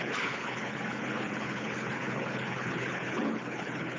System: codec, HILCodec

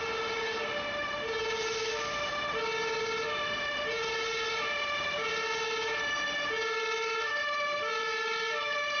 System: none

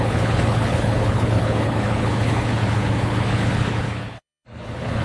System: codec, HILCodec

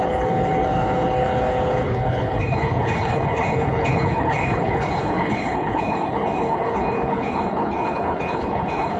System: codec, HILCodec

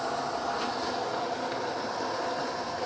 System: none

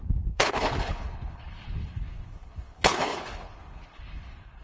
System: codec, HILCodec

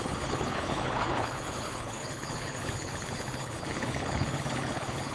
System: codec, HILCodec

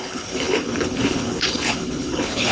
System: codec, HILCodec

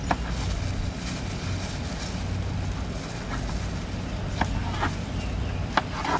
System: none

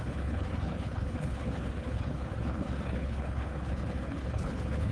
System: codec, HILCodec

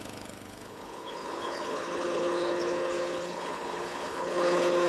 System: codec, HILCodec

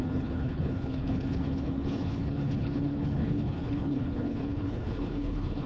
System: codec, HILCodec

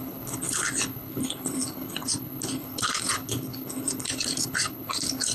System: codec, HILCodec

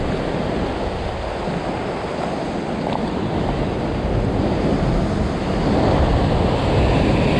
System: none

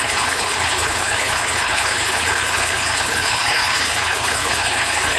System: codec, HILCodec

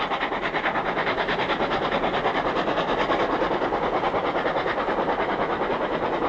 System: none